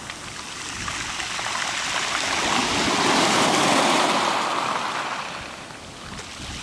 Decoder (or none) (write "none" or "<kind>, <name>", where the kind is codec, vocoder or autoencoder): none